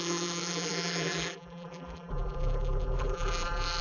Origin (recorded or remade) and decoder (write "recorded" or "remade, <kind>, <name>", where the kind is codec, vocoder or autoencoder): remade, vocoder, BigVGAN v2